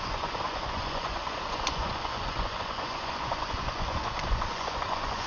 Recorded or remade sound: remade